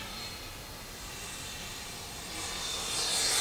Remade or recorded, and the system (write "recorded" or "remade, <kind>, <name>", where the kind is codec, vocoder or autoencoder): recorded